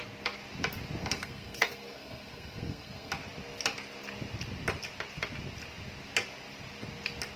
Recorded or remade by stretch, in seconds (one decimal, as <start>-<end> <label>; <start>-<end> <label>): 0.0-1.0 recorded; 1.0-3.1 remade; 3.1-7.4 recorded